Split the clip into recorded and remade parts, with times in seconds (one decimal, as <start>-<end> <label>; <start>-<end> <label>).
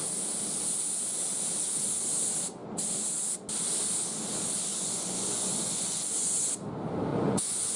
0.0-4.7 recorded; 4.7-6.5 remade; 6.5-7.1 recorded; 7.1-7.8 remade